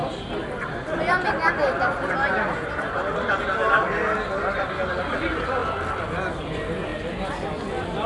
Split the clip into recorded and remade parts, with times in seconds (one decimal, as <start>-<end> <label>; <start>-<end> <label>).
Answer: 0.0-4.3 recorded; 4.3-5.6 remade; 5.6-6.4 recorded; 6.4-6.9 remade; 6.9-8.1 recorded